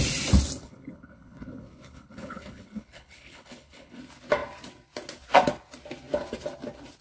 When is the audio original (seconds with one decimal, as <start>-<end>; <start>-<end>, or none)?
0.0-0.6; 4.0-7.0